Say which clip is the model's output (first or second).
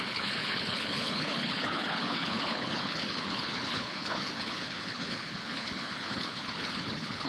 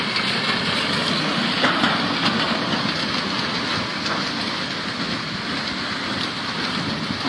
first